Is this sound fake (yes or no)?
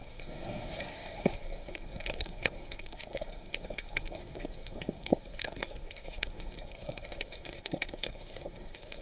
yes